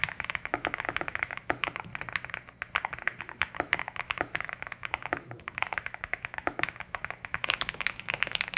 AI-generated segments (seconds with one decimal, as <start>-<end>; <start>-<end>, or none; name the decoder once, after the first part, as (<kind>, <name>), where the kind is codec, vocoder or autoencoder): 0.0-1.9 (autoencoder, DAC-VAE); 3.2-8.6